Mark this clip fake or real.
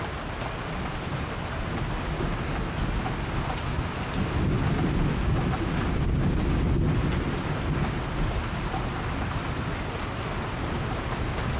real